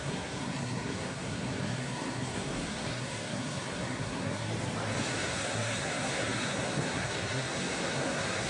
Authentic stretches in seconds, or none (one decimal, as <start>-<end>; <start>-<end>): 4.5-5.0